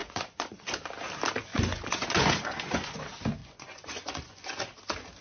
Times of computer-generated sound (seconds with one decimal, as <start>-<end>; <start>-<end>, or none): 0.0-0.9; 1.5-3.0; 3.4-4.6